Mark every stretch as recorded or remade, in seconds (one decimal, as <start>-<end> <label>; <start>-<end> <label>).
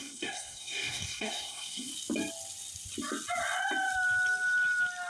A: 0.0-1.9 remade; 1.9-5.1 recorded